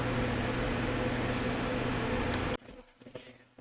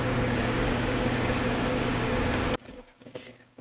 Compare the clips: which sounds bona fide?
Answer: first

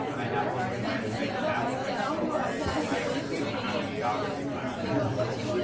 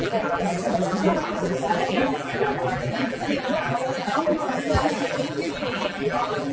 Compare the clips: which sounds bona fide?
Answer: first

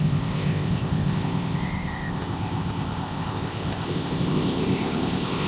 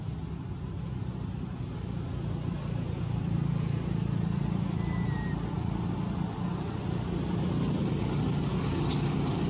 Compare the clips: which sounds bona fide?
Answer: second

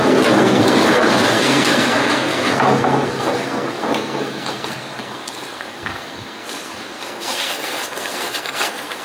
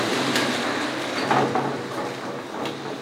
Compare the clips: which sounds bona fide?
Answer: second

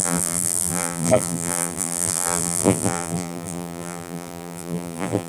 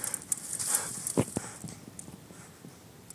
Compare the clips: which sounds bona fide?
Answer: second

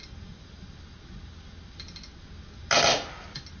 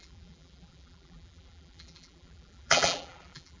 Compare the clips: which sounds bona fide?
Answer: first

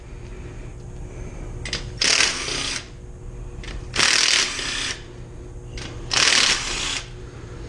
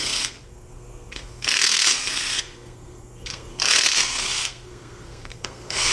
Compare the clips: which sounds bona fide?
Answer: first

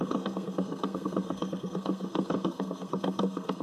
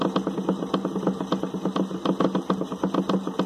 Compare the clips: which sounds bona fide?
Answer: second